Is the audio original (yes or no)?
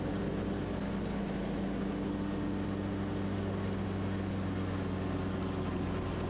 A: yes